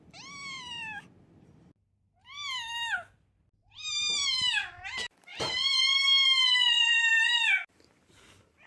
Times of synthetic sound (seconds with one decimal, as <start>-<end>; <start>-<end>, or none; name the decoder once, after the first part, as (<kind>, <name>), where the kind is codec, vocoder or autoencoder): none